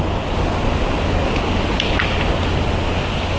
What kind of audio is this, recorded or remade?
recorded